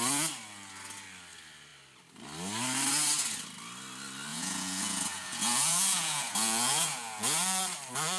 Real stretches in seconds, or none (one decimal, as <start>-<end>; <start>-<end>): 0.0-4.3; 7.6-8.2